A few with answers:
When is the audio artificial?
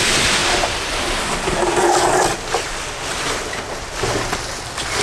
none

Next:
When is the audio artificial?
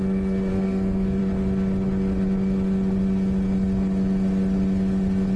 0.5-1.2 (codec, SNAC)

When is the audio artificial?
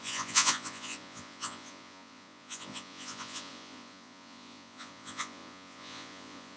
0.0-6.6 (vocoder, Vocos)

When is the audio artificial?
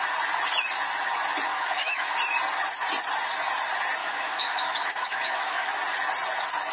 1.5-2.1 (autoencoder, DAC-VAE); 4.0-5.7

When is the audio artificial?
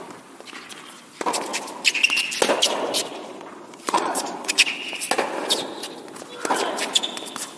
3.1-4.6 (vocoder, Vocos)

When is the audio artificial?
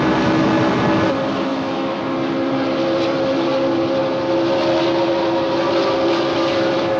1.5-2.0 (autoencoder, DAC-VAE)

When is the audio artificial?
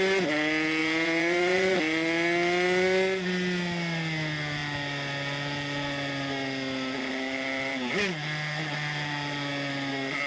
0.8-1.8 (vocoder, Vocos)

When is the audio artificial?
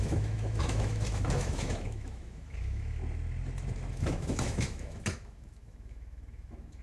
0.0-3.0 (autoencoder, DAC-VAE); 3.9-6.8